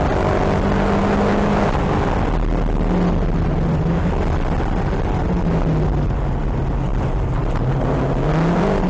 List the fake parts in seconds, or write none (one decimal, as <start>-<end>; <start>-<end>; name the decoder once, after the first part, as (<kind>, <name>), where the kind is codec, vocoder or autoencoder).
none